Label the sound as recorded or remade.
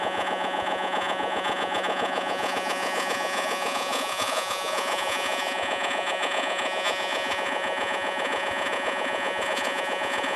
remade